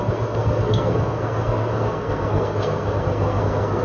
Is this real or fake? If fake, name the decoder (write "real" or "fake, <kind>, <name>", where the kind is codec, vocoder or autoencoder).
fake, codec, SNAC